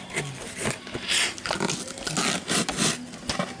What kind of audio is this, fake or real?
real